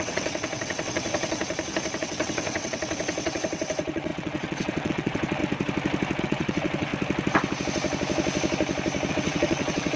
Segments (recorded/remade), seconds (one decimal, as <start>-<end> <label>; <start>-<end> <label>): 0.0-1.4 remade; 1.4-2.0 recorded; 2.0-5.4 remade; 5.4-6.2 recorded; 6.2-6.9 remade; 6.9-9.1 recorded; 9.1-10.0 remade